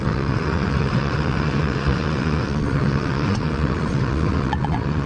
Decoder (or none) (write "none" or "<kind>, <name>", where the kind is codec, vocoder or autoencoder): vocoder, WaveNeXt